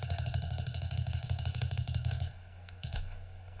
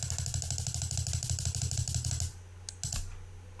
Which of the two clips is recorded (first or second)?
second